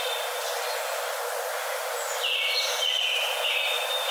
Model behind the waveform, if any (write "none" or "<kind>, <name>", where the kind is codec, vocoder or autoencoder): none